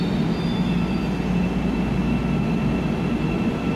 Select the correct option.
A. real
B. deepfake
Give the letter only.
A